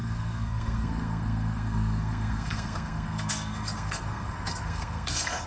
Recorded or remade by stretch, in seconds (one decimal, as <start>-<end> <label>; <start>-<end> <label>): 0.0-5.5 remade